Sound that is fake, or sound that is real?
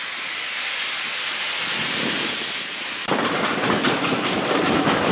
real